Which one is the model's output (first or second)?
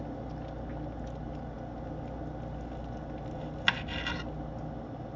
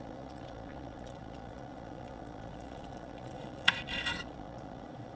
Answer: second